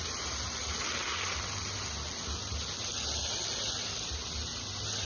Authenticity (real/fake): real